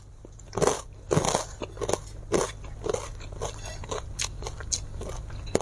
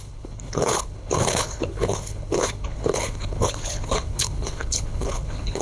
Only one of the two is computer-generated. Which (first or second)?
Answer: second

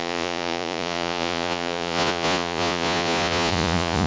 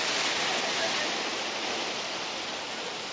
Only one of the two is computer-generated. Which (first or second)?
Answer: first